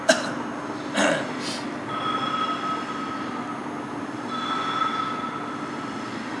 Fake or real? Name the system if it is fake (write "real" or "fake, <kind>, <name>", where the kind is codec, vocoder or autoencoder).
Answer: real